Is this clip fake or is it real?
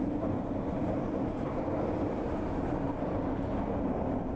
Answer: real